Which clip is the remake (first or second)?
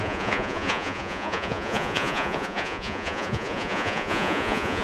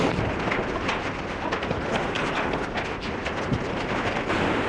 first